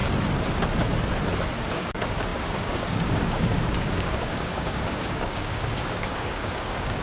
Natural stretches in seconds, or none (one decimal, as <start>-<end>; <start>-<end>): 0.0-1.7